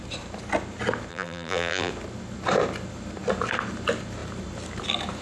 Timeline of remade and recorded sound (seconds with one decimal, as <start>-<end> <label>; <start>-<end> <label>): 0.0-1.1 recorded; 1.1-1.9 remade; 1.9-5.2 recorded